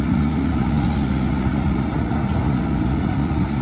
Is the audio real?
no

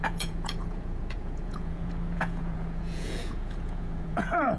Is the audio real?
no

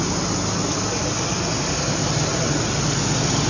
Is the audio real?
yes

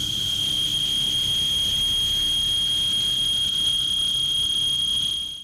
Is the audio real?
yes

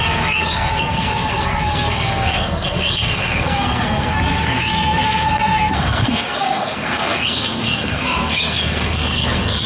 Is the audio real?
no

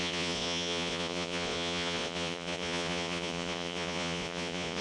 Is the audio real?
no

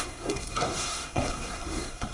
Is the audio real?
no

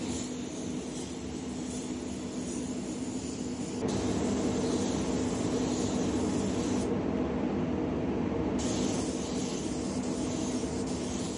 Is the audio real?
yes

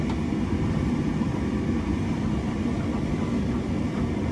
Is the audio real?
yes